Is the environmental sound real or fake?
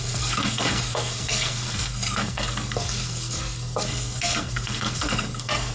fake